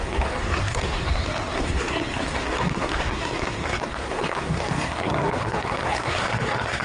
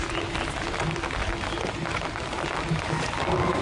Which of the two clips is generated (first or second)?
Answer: first